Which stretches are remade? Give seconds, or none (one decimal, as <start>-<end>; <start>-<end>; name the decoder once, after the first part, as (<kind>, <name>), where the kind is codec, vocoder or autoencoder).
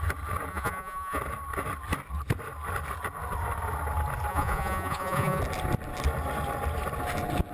0.5-1.2 (vocoder, Vocos); 4.3-5.4